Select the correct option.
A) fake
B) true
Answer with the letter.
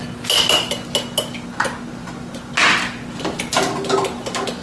B